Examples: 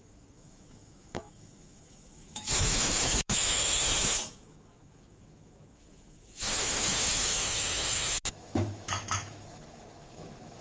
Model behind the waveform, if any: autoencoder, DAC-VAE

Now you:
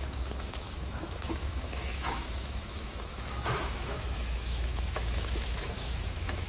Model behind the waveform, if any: autoencoder, DAC-VAE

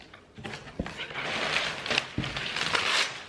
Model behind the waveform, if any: none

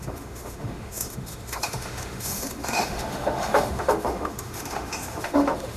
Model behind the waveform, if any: autoencoder, DAC-VAE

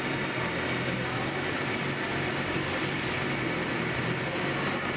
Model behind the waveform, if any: none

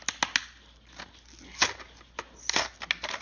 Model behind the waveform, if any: none